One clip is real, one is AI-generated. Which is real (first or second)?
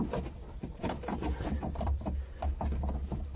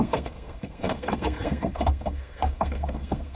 first